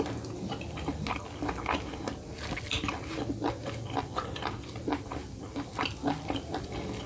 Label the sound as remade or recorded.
recorded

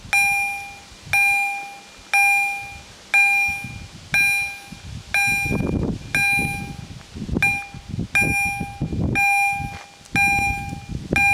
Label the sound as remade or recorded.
recorded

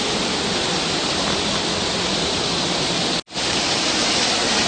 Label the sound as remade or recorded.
recorded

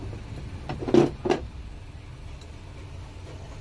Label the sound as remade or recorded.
recorded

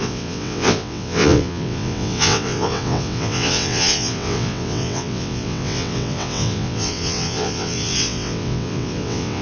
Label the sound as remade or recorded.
remade